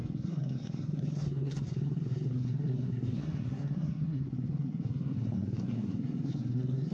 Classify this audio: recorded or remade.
remade